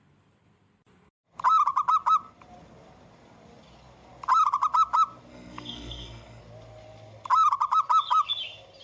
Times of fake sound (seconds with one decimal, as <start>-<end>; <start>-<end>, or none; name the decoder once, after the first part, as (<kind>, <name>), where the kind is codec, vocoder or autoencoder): 5.3-6.4 (codec, SNAC)